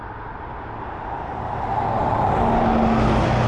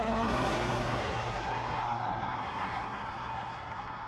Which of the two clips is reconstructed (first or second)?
second